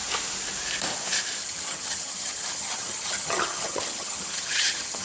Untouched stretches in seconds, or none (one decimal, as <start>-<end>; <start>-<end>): 0.0-1.4